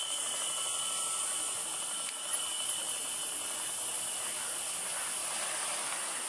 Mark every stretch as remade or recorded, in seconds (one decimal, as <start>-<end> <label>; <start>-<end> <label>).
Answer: 0.0-6.3 recorded